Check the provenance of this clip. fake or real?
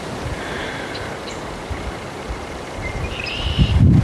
fake